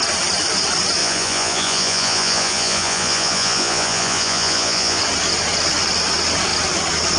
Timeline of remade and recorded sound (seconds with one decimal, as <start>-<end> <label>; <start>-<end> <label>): 0.0-1.0 recorded; 1.0-5.0 remade; 5.0-7.2 recorded